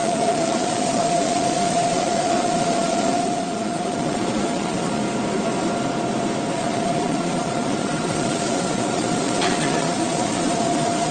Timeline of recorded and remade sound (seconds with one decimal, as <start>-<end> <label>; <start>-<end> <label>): 0.0-5.0 remade; 5.0-6.5 recorded; 6.5-11.1 remade